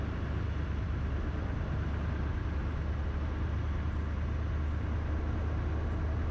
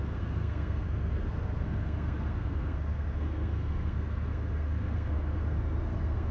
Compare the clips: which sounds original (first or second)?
first